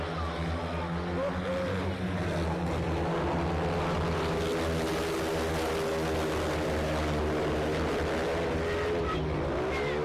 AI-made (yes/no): no